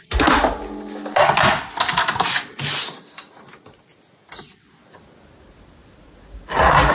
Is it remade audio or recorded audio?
recorded